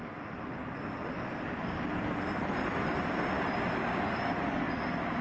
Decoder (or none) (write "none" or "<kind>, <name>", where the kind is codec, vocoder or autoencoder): none